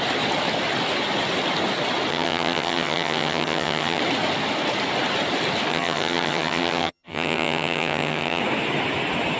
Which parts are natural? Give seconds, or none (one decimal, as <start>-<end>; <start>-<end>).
0.0-2.1; 4.0-5.7; 8.4-9.4

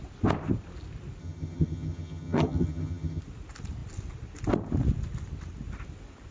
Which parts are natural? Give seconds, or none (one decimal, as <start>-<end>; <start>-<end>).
0.0-1.2; 3.2-6.3

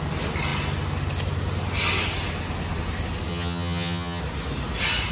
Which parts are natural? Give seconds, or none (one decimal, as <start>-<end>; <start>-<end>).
0.0-3.3; 4.2-5.1

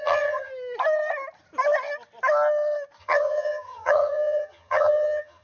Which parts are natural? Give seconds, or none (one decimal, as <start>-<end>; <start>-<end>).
0.5-3.0

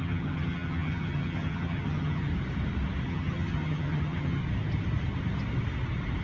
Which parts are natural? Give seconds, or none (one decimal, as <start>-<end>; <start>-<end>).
2.3-3.1; 4.4-6.2